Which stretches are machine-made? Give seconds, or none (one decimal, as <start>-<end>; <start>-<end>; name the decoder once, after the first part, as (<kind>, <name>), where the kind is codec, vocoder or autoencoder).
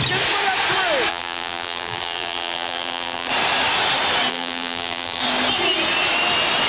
1.1-3.3 (vocoder, BigVGAN v2); 4.3-5.2